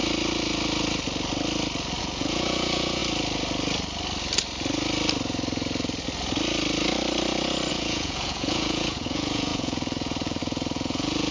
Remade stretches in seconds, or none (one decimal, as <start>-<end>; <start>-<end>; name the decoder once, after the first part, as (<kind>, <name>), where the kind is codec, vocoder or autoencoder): 2.0-3.0 (vocoder, Vocos); 7.7-11.3